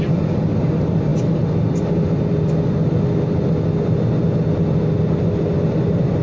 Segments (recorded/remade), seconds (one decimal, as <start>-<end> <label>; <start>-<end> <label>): 0.0-6.2 recorded